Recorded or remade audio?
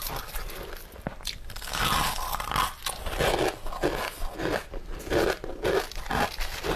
recorded